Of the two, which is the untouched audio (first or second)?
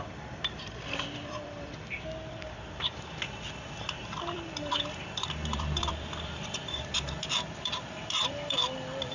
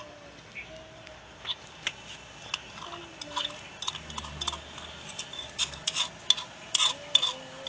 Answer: second